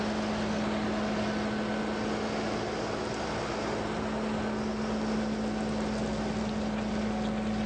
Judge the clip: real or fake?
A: real